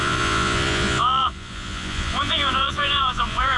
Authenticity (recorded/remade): remade